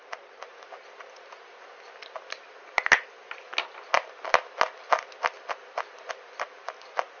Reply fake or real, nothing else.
real